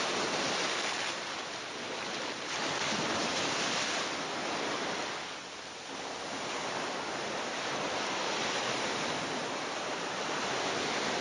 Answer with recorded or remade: recorded